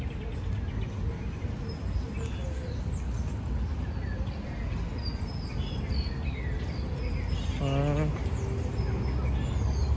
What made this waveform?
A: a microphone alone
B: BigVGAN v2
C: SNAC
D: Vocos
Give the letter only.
A